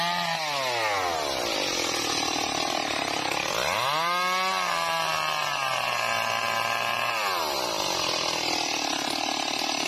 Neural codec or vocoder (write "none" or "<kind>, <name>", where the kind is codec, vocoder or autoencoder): none